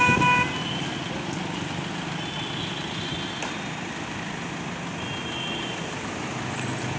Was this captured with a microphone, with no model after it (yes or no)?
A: yes